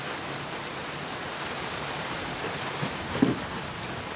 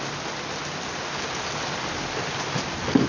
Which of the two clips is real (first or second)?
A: second